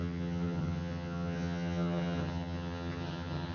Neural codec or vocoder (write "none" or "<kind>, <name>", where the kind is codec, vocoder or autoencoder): vocoder, HiFi-GAN